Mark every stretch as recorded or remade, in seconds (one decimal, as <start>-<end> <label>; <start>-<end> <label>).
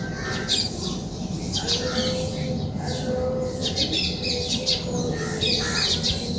0.0-3.6 recorded; 3.6-4.3 remade; 4.3-6.4 recorded